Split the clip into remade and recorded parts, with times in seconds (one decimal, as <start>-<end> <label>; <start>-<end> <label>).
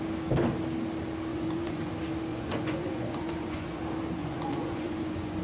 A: 0.0-1.3 recorded; 1.3-1.9 remade; 1.9-2.3 recorded; 2.3-3.8 remade; 3.8-4.2 recorded; 4.2-5.4 remade